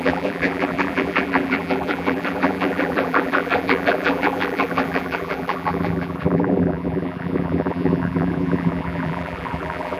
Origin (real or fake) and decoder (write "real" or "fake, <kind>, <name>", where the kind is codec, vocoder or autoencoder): fake, vocoder, BigVGAN v2